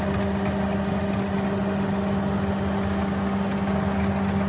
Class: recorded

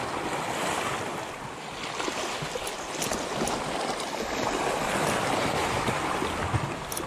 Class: recorded